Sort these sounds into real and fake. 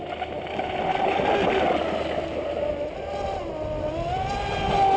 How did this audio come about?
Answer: real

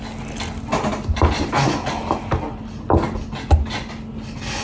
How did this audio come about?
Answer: real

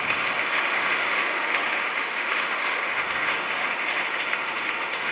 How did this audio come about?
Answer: fake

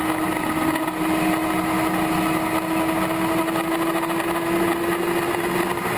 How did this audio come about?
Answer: real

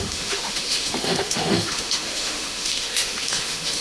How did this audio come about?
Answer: fake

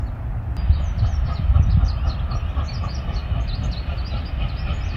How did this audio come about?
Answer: real